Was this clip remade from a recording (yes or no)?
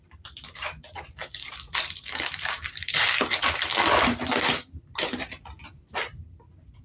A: yes